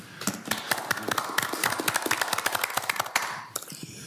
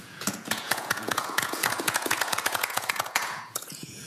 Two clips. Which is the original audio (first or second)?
first